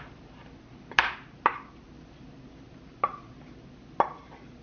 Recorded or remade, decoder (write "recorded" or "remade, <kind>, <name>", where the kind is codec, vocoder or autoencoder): recorded